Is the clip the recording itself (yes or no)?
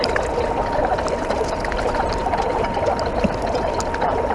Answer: yes